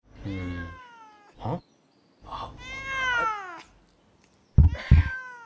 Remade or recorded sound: recorded